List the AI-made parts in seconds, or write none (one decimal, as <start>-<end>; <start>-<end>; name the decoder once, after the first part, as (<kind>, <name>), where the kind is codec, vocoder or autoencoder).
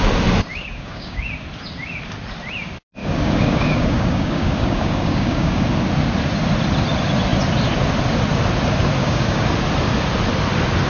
0.5-1.3 (codec, DAC); 3.0-5.6; 9.0-9.5